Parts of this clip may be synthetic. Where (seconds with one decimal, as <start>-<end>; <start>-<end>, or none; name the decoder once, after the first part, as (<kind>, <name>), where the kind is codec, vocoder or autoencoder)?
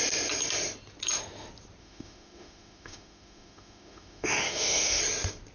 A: 1.8-5.0 (autoencoder, DAC-VAE)